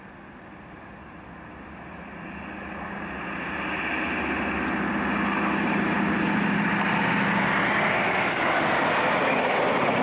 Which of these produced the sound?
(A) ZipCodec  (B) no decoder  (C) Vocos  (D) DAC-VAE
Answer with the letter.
B